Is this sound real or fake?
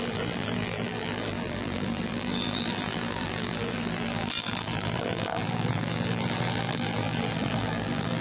fake